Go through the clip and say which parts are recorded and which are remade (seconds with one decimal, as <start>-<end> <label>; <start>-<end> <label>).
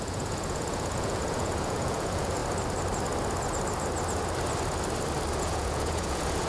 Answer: 0.0-2.4 remade; 2.4-5.4 recorded; 5.4-6.5 remade